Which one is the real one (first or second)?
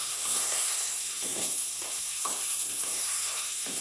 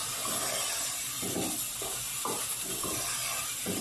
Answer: second